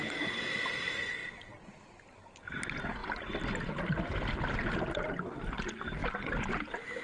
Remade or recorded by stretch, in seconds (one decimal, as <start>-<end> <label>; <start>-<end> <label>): 0.0-7.0 recorded